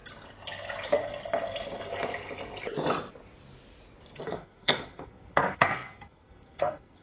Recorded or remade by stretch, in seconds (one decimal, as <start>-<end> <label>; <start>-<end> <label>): 0.0-4.2 recorded; 4.2-7.0 remade